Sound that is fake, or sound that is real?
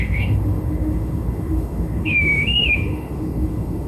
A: fake